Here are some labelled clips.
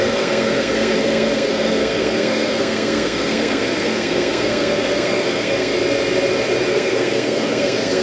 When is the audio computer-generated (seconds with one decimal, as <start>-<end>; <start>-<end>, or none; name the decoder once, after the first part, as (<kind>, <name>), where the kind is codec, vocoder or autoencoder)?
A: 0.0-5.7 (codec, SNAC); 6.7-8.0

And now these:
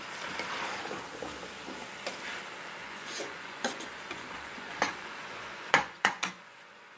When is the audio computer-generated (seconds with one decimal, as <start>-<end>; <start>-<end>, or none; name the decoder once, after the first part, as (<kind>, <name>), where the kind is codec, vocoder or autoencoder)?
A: 2.8-7.0 (vocoder, Vocos)

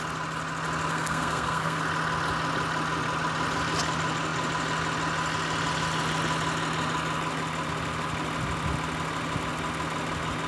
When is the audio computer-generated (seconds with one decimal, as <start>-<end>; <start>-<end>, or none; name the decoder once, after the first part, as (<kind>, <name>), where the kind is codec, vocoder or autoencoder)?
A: 0.9-1.8 (codec, SNAC)